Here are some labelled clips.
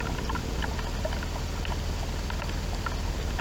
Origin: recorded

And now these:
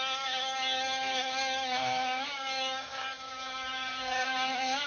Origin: remade